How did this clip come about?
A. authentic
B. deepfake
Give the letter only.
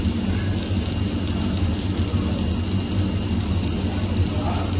A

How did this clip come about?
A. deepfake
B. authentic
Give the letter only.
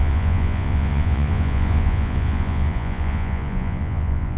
A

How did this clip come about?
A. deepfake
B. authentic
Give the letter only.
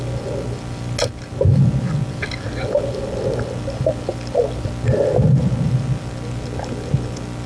B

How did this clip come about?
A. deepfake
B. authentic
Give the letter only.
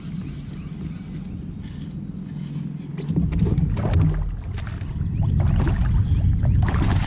B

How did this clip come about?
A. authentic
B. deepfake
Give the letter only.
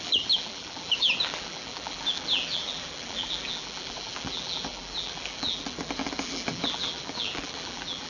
B